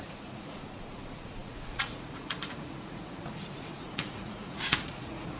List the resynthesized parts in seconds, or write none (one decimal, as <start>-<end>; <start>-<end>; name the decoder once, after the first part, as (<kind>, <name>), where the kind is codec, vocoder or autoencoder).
0.0-5.4 (vocoder, Vocos)